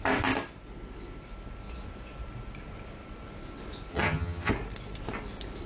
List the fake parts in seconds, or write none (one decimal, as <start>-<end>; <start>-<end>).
3.9-4.5